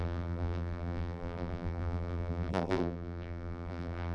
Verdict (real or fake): fake